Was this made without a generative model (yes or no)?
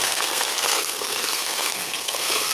no